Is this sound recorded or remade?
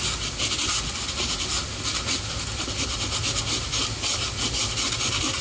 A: recorded